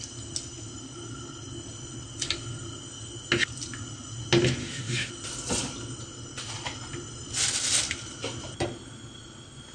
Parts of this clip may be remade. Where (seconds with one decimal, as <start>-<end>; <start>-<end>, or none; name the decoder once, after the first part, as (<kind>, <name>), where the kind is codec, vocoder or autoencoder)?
4.6-5.1 (autoencoder, DAC-VAE)